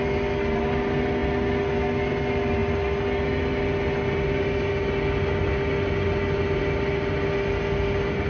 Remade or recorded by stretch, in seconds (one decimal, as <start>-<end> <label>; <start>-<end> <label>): 0.0-8.3 recorded

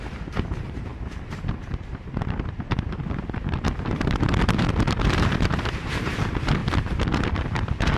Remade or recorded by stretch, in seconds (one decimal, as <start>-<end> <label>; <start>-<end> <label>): 0.0-6.6 remade; 6.6-7.3 recorded; 7.3-8.0 remade

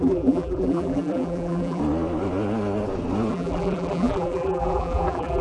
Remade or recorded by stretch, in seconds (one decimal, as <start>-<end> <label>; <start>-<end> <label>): 0.0-1.8 remade; 1.8-3.3 recorded; 3.3-5.4 remade

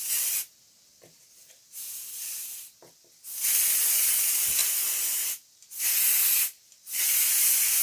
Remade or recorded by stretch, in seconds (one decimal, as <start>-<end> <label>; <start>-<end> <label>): 0.0-0.9 recorded; 0.9-2.0 remade; 2.0-7.8 recorded

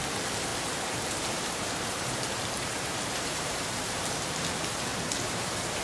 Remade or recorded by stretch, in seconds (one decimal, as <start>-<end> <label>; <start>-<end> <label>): 0.0-0.5 recorded; 0.5-4.0 remade; 4.0-4.9 recorded; 4.9-5.8 remade

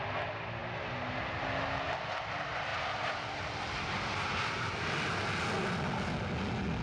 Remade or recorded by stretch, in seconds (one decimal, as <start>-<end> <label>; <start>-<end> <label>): 0.0-6.8 recorded

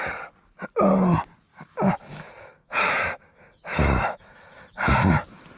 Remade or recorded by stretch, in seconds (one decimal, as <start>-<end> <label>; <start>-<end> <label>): 0.0-1.5 recorded; 1.5-4.9 remade; 4.9-5.6 recorded

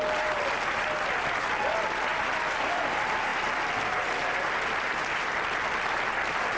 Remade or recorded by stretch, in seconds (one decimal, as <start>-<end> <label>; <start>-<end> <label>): 0.0-3.3 remade; 3.3-4.9 recorded; 4.9-6.6 remade